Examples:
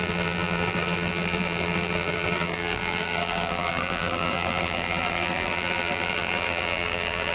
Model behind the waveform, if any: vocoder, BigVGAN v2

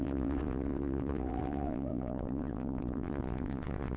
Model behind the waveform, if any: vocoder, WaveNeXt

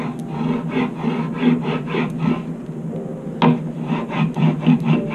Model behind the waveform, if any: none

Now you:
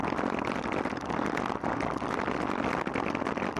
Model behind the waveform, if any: none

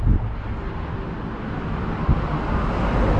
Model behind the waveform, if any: none